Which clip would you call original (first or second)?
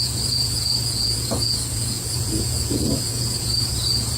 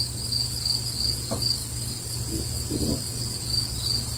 second